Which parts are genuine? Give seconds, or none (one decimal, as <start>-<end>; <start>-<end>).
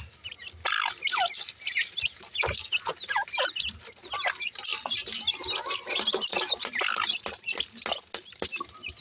0.0-9.0